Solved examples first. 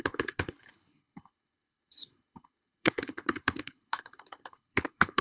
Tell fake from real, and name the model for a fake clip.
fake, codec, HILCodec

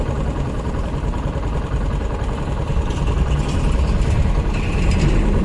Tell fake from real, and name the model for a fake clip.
real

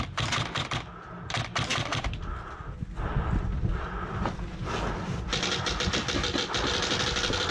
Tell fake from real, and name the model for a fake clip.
real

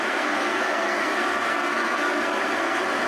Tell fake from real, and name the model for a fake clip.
fake, codec, SNAC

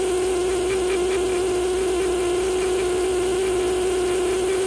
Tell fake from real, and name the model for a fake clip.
real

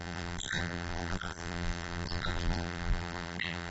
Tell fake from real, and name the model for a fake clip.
fake, vocoder, BigVGAN v2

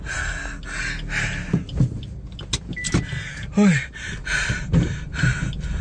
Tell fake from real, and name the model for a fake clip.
real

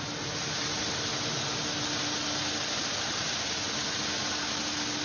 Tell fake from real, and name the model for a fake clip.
real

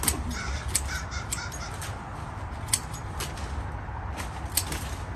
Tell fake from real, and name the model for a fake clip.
real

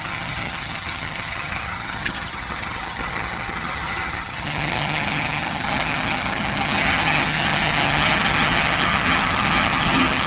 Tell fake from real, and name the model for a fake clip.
fake, vocoder, HiFi-GAN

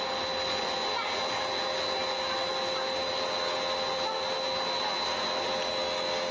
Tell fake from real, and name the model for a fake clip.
real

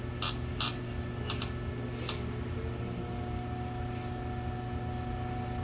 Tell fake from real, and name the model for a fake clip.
real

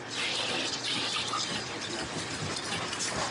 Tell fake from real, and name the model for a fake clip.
fake, vocoder, BigVGAN v2